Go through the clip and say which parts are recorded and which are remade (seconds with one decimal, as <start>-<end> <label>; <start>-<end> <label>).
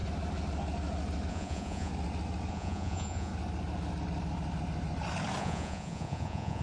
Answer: 0.0-1.3 recorded; 1.3-1.9 remade; 1.9-2.5 recorded; 2.5-3.3 remade; 3.3-5.4 recorded; 5.4-6.6 remade